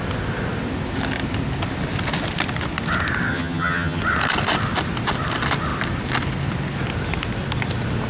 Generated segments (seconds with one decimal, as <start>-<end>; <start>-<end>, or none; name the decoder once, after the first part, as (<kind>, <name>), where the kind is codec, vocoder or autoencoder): 3.3-4.0 (vocoder, HiFi-GAN)